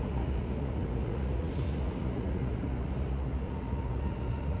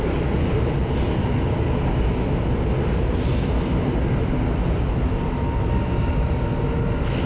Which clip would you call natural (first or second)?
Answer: second